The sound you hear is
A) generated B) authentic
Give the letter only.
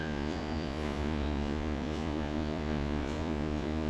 A